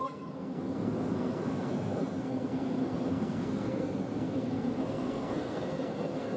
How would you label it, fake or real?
fake